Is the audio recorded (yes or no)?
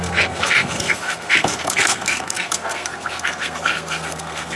no